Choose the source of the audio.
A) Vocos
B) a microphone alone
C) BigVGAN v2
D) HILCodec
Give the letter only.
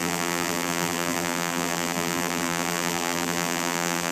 C